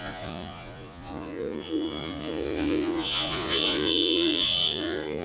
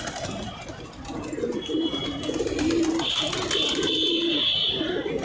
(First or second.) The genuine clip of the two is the second